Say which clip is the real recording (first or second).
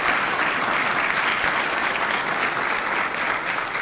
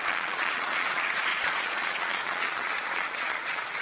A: first